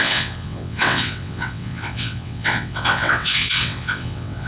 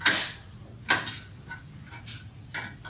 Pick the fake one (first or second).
first